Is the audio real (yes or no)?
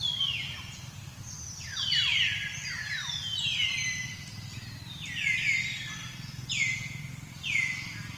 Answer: yes